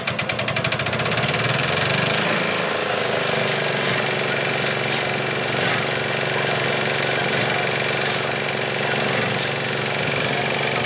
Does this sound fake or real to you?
real